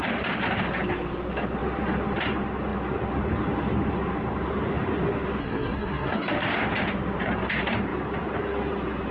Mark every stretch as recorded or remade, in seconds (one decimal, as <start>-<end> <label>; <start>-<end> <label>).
0.0-5.4 recorded; 5.4-6.3 remade; 6.3-9.1 recorded